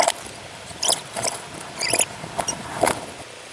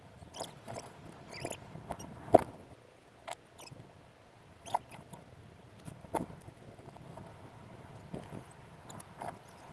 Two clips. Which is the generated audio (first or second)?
first